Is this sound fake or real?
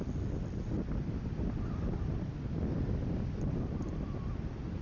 real